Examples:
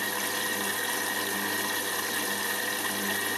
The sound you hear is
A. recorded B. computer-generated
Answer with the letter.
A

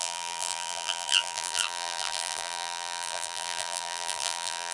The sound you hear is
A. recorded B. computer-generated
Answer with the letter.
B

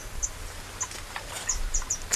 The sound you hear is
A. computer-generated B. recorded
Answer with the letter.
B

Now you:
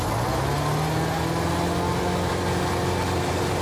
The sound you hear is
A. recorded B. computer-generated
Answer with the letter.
A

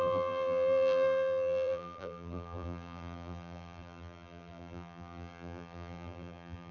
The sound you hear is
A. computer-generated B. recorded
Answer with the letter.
A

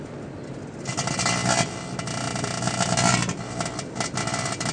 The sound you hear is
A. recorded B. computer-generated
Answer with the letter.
A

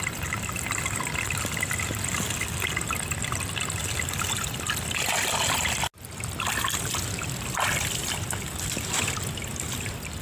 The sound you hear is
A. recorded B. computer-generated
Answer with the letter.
A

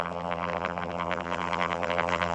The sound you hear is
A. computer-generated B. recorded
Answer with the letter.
A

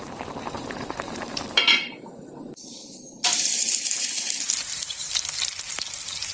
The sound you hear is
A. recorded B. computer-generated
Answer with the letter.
B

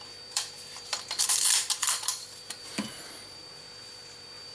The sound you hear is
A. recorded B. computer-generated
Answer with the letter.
B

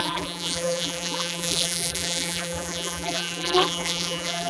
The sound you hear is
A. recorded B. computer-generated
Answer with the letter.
B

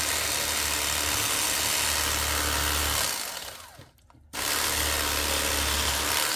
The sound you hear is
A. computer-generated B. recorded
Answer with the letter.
B